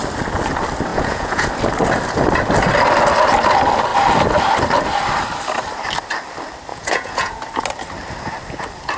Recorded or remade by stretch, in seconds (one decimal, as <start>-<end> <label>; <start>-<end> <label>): 0.0-0.9 recorded; 0.9-1.5 remade; 1.5-6.7 recorded; 6.7-7.3 remade; 7.3-9.0 recorded